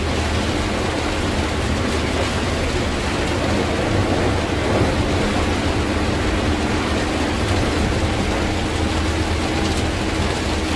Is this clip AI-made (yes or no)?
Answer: no